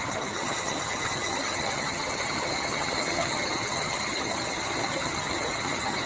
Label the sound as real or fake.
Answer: fake